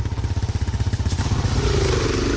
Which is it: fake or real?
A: real